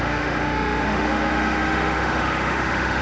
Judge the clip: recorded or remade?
remade